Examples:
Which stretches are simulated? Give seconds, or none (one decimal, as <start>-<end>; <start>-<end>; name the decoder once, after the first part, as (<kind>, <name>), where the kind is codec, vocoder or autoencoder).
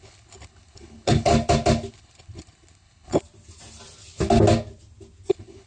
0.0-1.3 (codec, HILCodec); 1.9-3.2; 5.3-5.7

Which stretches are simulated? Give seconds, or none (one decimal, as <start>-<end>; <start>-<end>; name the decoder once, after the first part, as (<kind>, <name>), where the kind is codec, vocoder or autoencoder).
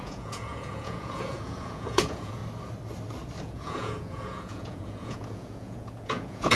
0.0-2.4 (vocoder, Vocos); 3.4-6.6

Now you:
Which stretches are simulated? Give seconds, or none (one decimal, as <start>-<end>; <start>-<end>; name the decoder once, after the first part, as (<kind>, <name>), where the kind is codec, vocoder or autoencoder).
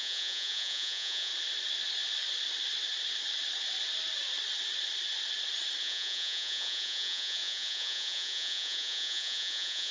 0.0-1.3 (vocoder, Vocos); 5.8-9.9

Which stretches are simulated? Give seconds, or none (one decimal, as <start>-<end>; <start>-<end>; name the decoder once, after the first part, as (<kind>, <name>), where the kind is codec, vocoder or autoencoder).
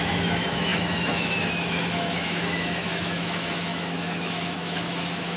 0.0-5.4 (autoencoder, DAC-VAE)